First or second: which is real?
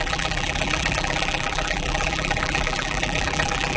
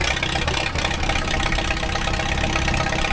second